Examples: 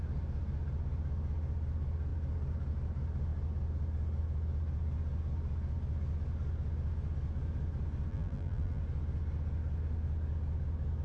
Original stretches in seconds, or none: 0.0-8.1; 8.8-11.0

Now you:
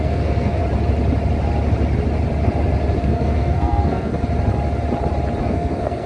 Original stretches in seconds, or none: 0.6-3.0; 4.1-5.4

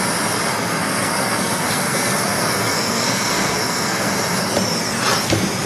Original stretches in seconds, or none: 0.0-0.7; 4.1-5.7

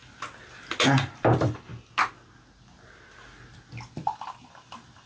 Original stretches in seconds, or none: 0.0-0.8; 1.7-4.5